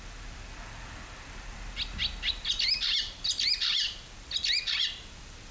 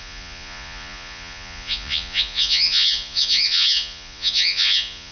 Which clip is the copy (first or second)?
second